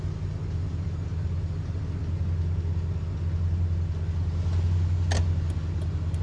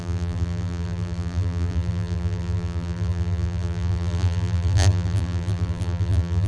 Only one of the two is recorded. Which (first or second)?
first